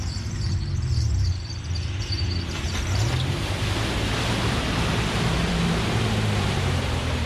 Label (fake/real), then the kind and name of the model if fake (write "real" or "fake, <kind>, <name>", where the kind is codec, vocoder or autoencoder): fake, vocoder, BigVGAN v2